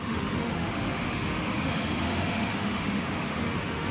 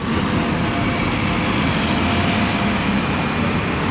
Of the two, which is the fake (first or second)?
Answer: first